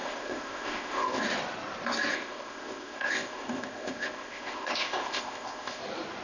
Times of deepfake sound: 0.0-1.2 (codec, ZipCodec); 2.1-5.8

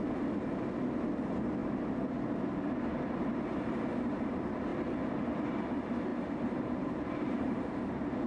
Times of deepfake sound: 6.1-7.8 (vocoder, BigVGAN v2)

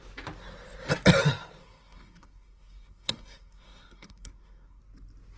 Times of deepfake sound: 1.6-4.8 (codec, SNAC)

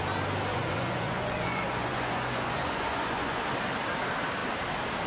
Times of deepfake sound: 0.5-3.4 (vocoder, Vocos)